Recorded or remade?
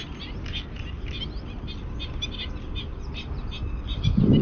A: recorded